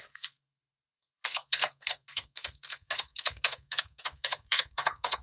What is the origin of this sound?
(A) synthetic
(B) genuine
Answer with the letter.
A